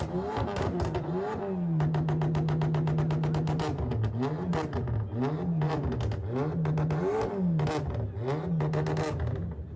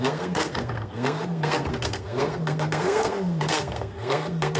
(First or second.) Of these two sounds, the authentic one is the first